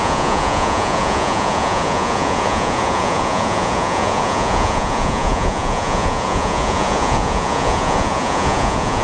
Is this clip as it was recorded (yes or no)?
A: no